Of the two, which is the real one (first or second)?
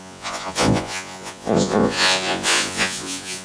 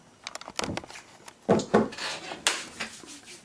second